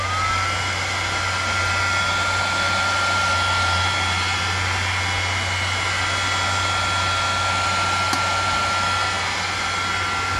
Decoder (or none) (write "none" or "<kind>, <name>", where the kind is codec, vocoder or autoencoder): none